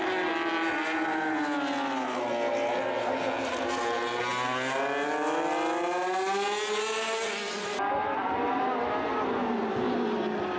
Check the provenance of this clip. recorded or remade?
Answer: recorded